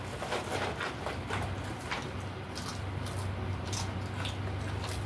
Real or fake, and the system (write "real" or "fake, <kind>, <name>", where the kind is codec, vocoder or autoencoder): real